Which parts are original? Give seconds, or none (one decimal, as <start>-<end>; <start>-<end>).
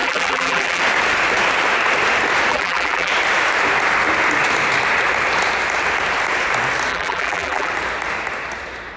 0.8-2.5; 3.1-6.9; 7.7-9.0